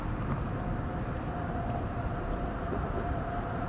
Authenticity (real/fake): real